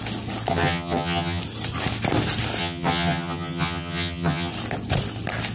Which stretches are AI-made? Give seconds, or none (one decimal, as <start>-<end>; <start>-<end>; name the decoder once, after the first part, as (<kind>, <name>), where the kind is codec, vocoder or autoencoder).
0.5-1.4 (vocoder, HiFi-GAN); 2.6-4.5